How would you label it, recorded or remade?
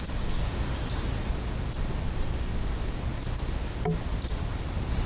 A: recorded